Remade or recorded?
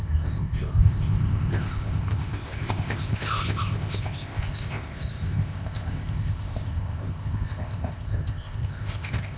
remade